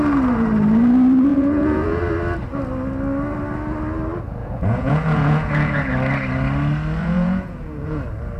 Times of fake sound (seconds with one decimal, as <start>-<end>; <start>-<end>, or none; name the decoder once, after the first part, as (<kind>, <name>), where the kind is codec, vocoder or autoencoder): 1.3-2.0 (vocoder, Vocos); 4.4-5.9; 7.0-8.0